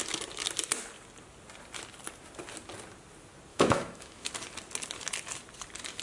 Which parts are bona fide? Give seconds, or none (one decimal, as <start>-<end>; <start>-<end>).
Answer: 0.0-3.5; 4.3-6.0